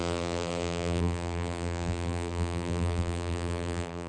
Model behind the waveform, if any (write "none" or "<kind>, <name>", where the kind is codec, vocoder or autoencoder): vocoder, BigVGAN v2